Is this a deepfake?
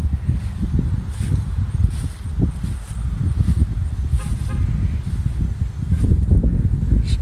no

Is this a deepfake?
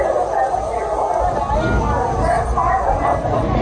no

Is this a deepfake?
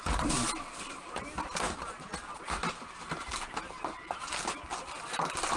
no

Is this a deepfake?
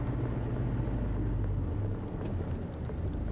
no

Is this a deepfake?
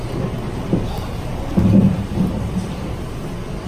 no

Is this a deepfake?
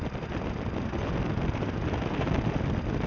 no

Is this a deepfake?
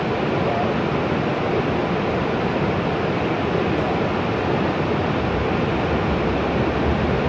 no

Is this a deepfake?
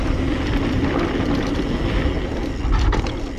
no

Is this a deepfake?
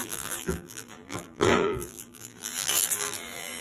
yes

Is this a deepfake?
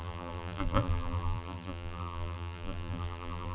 yes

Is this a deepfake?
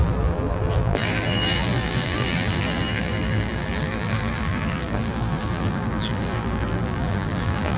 yes